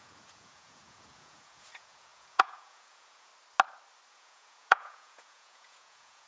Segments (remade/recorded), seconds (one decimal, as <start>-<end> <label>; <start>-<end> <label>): 0.0-3.3 remade; 3.3-4.1 recorded; 4.1-6.3 remade